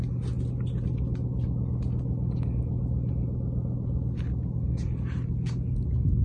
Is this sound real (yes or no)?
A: yes